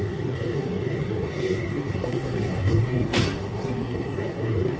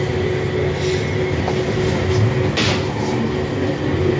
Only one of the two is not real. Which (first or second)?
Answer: first